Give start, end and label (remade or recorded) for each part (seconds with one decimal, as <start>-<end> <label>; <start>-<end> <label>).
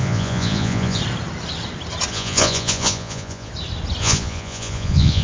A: 0.0-1.0 remade; 1.0-2.1 recorded; 2.1-3.5 remade; 3.5-4.0 recorded; 4.0-5.2 remade